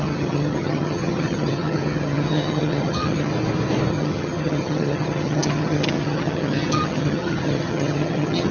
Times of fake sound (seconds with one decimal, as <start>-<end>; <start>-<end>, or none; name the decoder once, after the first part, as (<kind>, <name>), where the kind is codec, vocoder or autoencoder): 0.0-3.3 (vocoder, HiFi-GAN); 3.9-8.5